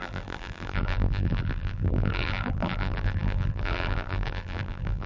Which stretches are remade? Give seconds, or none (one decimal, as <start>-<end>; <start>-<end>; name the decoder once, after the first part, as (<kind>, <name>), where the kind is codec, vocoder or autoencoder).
0.0-5.1 (vocoder, BigVGAN v2)